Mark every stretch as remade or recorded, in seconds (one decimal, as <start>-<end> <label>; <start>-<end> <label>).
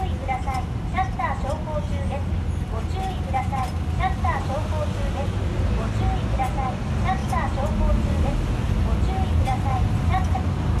0.0-10.8 recorded